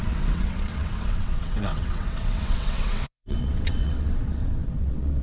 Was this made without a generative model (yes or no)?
no